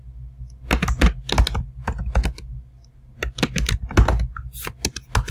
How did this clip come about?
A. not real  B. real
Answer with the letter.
B